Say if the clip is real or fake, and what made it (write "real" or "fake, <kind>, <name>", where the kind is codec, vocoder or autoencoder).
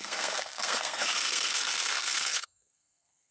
fake, codec, SNAC